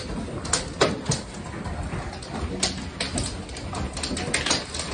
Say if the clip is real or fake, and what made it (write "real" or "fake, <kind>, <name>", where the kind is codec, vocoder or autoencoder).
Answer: real